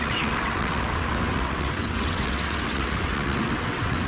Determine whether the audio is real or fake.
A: fake